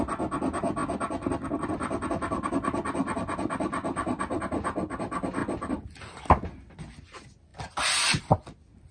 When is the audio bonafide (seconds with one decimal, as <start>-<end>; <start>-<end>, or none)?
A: 0.0-7.5; 8.2-8.9